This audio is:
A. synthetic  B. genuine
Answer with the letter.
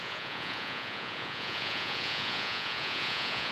A